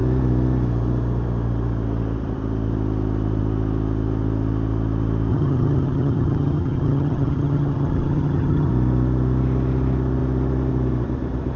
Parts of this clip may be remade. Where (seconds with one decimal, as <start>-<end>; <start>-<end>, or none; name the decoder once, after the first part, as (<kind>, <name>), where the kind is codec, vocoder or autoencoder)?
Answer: 5.3-8.7 (vocoder, HiFi-GAN)